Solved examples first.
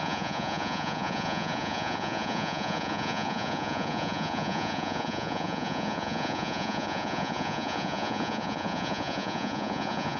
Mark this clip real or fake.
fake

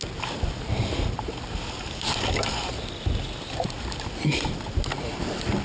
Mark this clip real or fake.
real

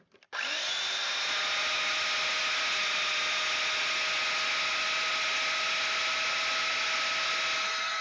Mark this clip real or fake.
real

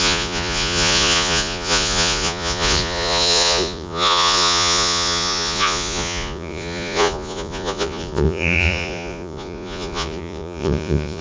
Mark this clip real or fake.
fake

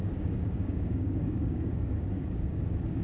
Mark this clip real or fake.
fake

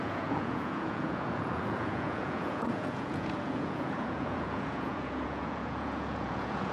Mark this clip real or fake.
fake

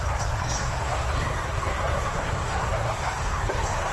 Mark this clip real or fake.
fake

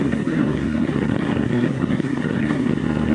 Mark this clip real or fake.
fake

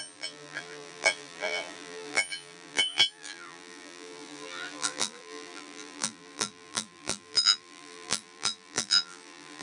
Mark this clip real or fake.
fake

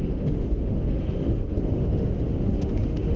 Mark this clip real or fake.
fake